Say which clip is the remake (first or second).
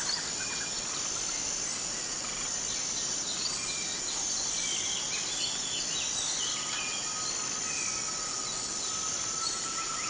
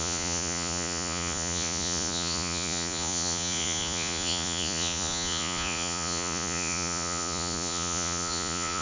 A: second